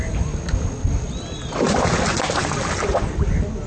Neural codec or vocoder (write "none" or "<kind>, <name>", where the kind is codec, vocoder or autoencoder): none